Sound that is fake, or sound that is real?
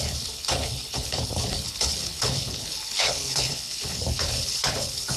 fake